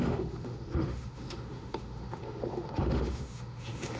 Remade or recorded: remade